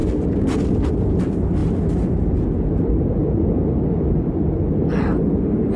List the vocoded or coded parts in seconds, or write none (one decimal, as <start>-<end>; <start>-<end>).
none